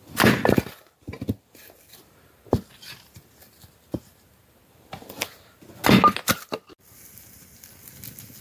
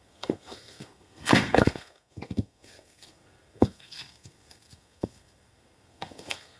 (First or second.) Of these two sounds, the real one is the first